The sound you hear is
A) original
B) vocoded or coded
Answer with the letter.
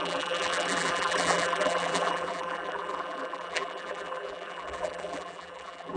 B